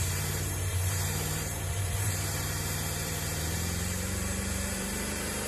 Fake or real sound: fake